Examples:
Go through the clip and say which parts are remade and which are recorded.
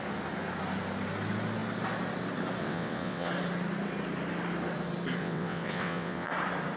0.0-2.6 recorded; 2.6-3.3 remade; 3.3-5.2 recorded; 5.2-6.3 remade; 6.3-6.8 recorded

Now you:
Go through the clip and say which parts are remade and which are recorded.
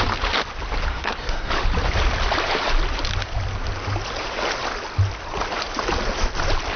0.0-0.9 recorded; 0.9-1.5 remade; 1.5-6.8 recorded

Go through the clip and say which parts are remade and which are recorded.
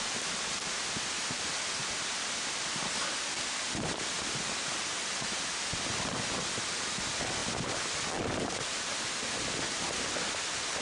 0.0-10.8 recorded